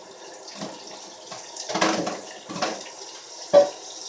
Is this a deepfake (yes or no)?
no